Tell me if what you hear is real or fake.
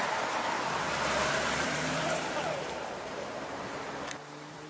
fake